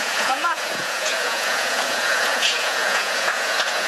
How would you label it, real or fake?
fake